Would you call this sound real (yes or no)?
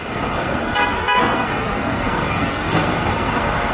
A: no